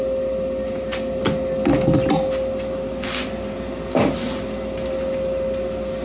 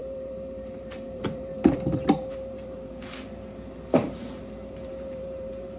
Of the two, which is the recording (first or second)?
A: first